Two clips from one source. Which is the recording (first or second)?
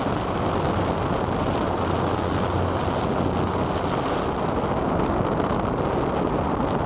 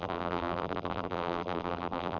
first